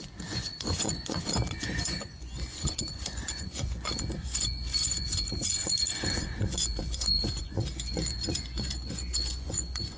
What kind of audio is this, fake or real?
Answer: fake